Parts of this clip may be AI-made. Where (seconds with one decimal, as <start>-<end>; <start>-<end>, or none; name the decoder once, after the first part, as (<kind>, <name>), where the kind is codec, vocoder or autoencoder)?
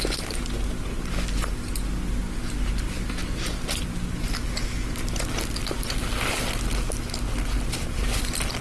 none